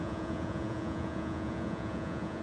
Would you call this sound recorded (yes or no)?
no